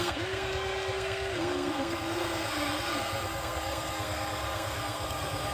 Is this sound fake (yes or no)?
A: yes